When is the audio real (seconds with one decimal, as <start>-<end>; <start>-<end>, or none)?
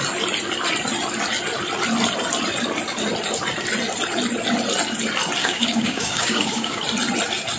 0.0-5.4; 6.8-7.6